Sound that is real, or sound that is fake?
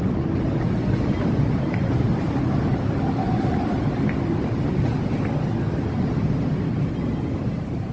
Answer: real